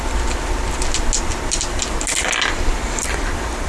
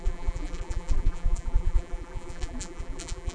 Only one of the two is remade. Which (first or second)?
second